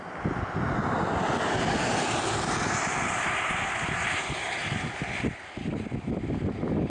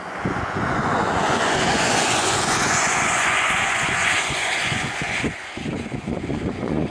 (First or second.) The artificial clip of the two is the second